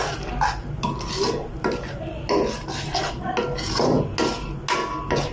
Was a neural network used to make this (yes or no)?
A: no